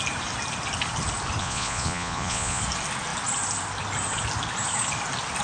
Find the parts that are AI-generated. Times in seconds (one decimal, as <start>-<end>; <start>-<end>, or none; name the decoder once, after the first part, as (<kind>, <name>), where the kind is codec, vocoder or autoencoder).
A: 1.4-2.6 (vocoder, Vocos)